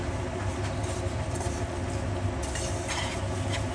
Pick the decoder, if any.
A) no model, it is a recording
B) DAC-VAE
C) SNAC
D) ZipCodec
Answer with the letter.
A